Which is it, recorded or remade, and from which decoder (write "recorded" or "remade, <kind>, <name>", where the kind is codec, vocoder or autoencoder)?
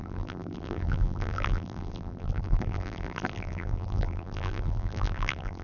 remade, vocoder, BigVGAN v2